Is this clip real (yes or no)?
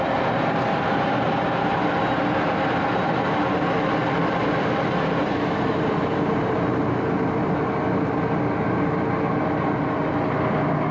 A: yes